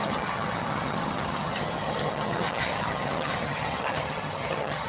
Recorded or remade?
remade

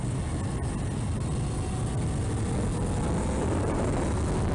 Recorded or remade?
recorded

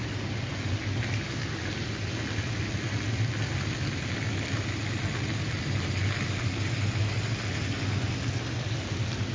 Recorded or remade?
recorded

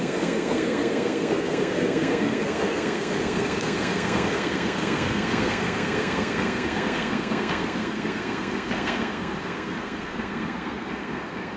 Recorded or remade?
remade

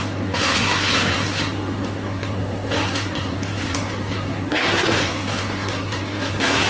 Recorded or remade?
remade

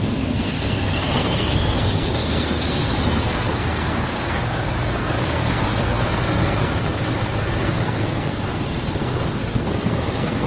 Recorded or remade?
remade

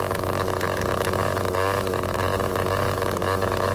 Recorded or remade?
remade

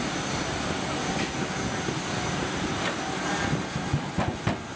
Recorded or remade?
recorded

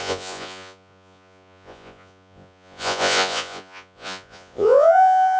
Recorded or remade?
remade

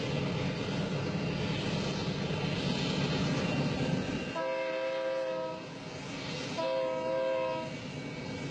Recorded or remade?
recorded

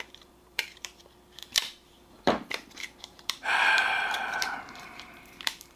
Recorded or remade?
remade